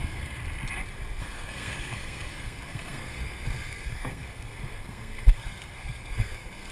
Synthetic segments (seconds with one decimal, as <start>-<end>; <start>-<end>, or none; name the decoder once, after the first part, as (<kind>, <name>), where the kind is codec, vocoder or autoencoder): 0.0-0.4 (codec, SNAC); 1.2-6.7